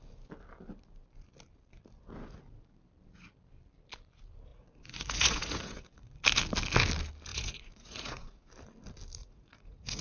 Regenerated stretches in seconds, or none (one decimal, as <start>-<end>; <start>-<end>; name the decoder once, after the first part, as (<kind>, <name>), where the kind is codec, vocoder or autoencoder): 4.5-6.2 (vocoder, Vocos); 7.3-8.5; 9.2-10.0